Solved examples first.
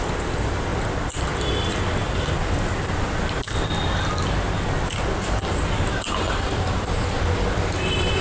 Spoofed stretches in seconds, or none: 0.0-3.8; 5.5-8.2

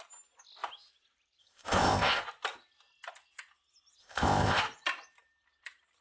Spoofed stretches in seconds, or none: 1.4-2.2; 4.0-4.6

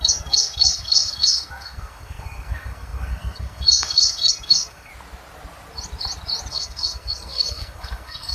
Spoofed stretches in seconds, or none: 0.0-4.9; 6.5-8.3

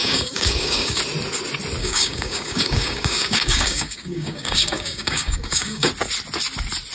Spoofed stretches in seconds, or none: 0.0-1.0; 1.8-5.9

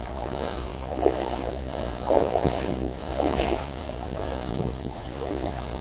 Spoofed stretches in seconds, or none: 0.0-5.8

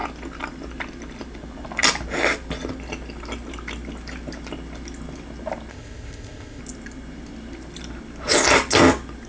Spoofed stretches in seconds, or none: 5.7-6.6

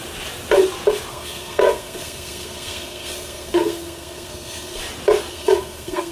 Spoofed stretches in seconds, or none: 1.1-4.8; 5.3-6.1

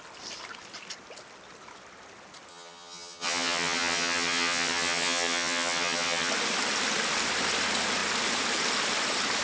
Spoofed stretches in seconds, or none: 2.5-6.3